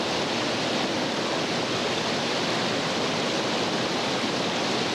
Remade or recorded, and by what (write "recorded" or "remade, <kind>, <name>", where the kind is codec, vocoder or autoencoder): recorded